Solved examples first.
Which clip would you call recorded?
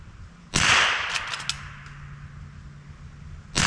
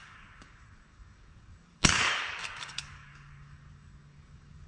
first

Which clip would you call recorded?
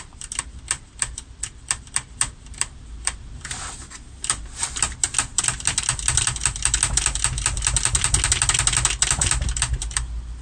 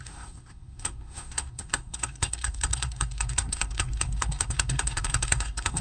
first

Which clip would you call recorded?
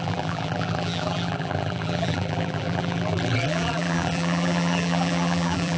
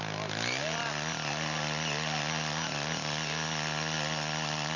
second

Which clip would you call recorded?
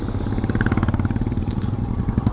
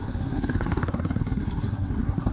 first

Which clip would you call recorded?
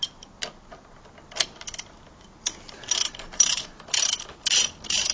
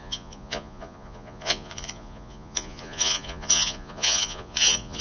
first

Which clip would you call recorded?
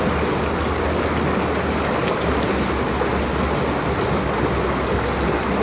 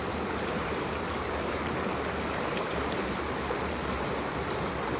first